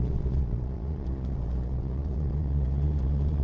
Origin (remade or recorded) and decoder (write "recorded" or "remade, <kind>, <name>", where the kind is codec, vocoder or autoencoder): remade, vocoder, Vocos